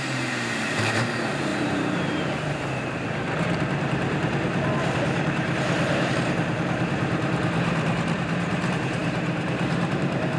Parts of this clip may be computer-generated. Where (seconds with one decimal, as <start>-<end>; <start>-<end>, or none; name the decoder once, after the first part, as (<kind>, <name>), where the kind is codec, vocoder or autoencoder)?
0.0-10.4 (vocoder, BigVGAN v2)